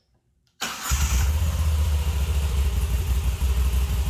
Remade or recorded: remade